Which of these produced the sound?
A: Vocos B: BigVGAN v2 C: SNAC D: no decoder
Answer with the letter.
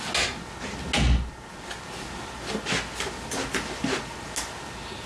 D